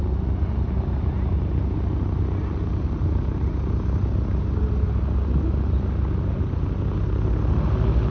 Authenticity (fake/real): real